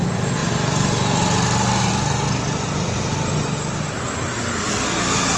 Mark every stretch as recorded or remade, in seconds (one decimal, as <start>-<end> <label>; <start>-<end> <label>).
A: 0.0-5.4 recorded